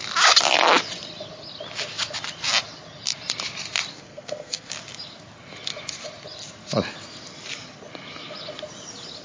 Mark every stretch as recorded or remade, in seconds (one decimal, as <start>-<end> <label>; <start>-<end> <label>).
0.0-3.9 recorded; 3.9-4.7 remade; 4.7-9.2 recorded